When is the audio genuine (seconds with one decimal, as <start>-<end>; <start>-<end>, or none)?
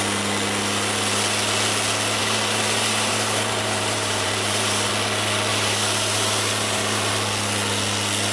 0.0-2.2; 4.9-5.5; 7.1-8.3